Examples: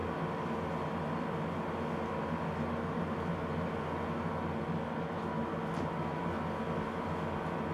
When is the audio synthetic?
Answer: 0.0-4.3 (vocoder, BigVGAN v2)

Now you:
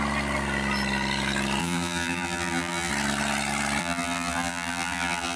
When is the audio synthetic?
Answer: 1.6-2.9 (vocoder, BigVGAN v2); 3.8-5.4

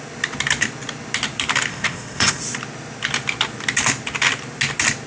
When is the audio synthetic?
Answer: 1.7-2.4 (codec, ZipCodec)

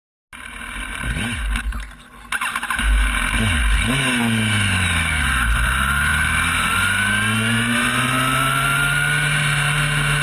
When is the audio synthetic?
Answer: none

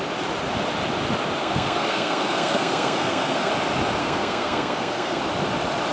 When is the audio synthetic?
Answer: 1.4-3.5 (codec, SNAC); 4.0-5.2

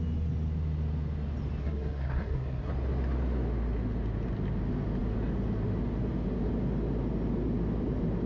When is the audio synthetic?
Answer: 1.6-2.7 (codec, SNAC)